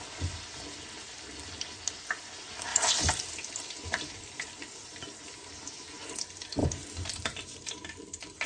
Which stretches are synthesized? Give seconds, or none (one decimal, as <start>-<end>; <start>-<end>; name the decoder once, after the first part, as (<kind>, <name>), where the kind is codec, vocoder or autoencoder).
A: 2.7-5.2 (vocoder, BigVGAN v2); 6.6-7.9